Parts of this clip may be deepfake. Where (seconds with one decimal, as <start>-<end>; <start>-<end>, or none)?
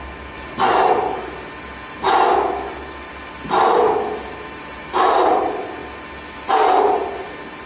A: none